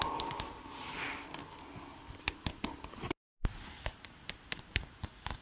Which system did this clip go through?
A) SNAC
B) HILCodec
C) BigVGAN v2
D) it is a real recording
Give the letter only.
D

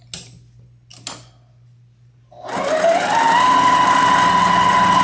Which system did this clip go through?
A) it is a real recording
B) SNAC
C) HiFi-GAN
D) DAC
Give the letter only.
A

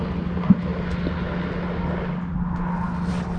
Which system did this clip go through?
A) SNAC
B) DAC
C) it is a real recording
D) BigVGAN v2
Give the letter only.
C